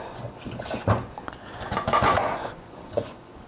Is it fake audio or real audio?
fake